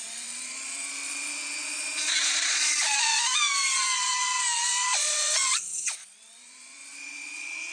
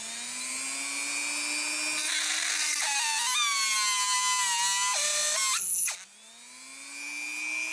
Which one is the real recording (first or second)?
second